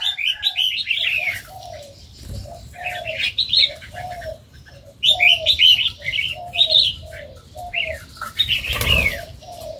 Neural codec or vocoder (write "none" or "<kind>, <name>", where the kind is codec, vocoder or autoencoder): vocoder, BigVGAN v2